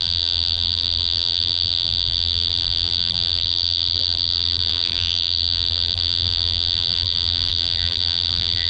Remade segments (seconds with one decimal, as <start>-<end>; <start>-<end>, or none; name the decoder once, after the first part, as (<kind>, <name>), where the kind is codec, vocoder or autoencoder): 0.0-8.7 (vocoder, BigVGAN v2)

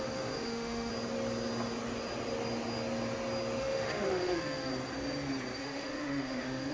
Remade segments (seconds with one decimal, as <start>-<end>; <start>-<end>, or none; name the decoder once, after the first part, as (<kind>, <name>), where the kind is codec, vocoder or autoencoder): 0.0-0.9 (autoencoder, DAC-VAE); 3.6-4.7; 5.6-6.7

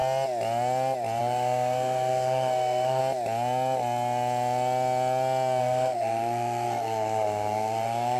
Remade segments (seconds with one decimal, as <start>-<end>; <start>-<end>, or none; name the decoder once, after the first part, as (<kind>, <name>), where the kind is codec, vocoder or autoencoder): 1.2-3.0 (codec, SNAC); 5.6-8.2

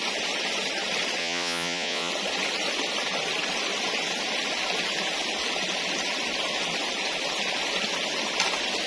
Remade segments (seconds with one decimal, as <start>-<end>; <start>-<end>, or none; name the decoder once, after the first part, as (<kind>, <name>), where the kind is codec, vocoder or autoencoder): 1.2-2.1 (vocoder, Vocos)

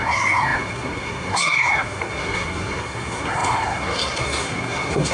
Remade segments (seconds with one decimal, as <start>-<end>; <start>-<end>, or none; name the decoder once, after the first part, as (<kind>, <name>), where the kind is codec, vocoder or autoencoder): 0.0-5.1 (codec, SNAC)

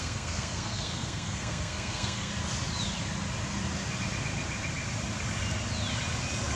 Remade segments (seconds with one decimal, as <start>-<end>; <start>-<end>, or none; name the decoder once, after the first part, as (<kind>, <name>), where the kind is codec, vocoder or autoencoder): 0.0-2.3 (codec, SNAC)

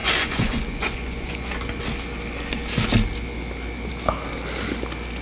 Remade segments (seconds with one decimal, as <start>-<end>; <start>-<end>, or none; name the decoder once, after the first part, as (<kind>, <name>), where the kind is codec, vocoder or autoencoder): 0.0-1.5 (vocoder, Vocos)